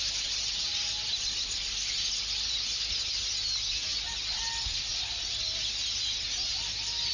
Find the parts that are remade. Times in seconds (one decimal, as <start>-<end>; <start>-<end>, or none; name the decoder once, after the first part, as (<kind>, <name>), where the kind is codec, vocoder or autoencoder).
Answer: none